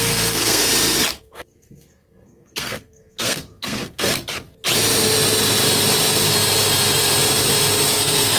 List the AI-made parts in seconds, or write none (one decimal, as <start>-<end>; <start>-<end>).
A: 0.0-0.6; 1.2-4.1; 7.9-8.4